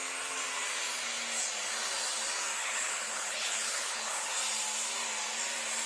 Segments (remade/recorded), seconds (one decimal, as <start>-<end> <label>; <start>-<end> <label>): 0.0-2.6 recorded; 2.6-4.3 remade; 4.3-5.9 recorded